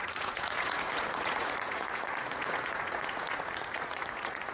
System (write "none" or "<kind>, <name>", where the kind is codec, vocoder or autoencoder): vocoder, Vocos